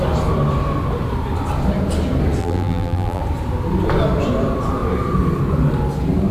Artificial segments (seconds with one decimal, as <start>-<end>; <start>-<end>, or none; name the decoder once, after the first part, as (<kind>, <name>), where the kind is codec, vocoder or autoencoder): 2.4-3.2 (vocoder, BigVGAN v2)